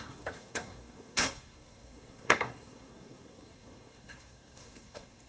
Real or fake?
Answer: fake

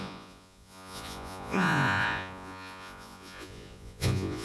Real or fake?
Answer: fake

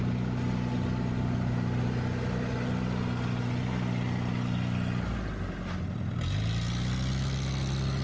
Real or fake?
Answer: real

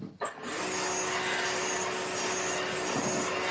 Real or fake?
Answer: real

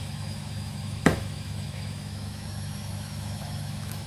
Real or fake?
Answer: fake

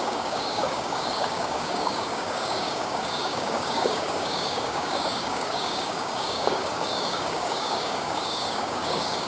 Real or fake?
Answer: fake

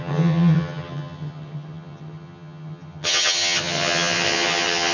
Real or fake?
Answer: fake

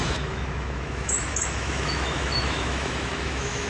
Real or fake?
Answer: fake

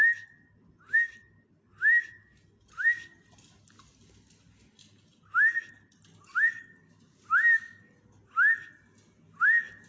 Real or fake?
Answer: real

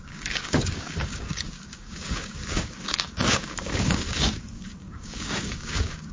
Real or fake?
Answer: fake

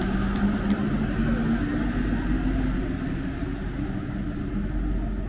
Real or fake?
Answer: real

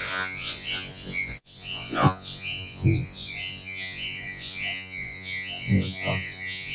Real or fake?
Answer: fake